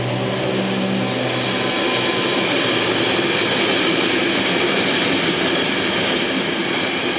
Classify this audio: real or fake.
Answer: real